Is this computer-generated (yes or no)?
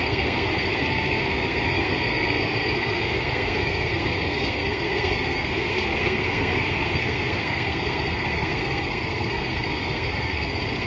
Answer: yes